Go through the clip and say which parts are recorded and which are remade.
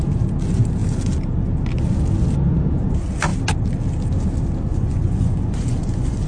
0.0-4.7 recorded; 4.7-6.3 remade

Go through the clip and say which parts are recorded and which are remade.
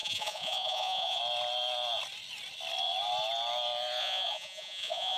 0.0-1.2 remade; 1.2-4.0 recorded; 4.0-5.2 remade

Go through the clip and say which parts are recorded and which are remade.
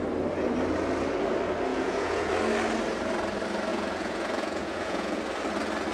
0.0-1.7 recorded; 1.7-2.3 remade; 2.3-3.7 recorded; 3.7-5.2 remade; 5.2-5.9 recorded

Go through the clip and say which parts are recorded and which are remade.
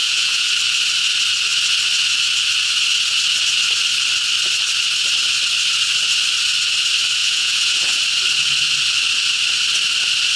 0.0-0.5 remade; 0.5-7.2 recorded; 7.2-8.0 remade; 8.0-10.4 recorded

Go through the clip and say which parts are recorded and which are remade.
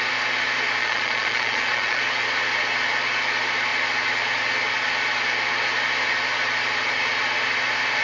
0.0-0.8 recorded; 0.8-2.0 remade; 2.0-8.0 recorded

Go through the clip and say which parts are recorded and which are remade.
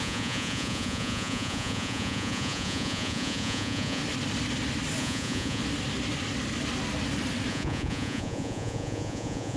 0.0-4.0 remade; 4.0-5.0 recorded; 5.0-5.6 remade; 5.6-7.5 recorded; 7.5-9.6 remade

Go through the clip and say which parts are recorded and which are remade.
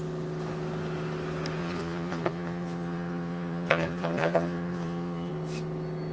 0.0-1.6 recorded; 1.6-5.3 remade; 5.3-6.1 recorded